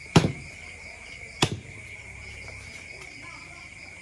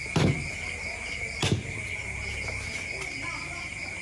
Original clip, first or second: second